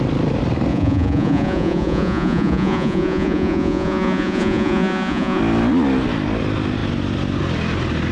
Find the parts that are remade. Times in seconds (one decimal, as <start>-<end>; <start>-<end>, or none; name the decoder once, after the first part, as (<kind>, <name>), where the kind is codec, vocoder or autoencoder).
0.7-5.4 (vocoder, Vocos)